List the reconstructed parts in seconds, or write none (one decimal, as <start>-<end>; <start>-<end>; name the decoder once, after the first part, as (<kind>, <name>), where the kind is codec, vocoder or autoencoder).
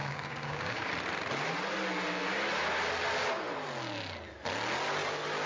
0.0-0.9 (codec, DAC)